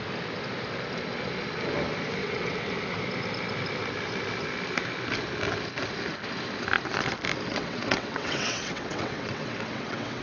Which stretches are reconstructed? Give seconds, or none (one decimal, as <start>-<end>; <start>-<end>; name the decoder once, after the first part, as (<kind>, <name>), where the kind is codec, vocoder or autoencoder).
2.2-2.7 (vocoder, WaveNeXt); 7.5-10.2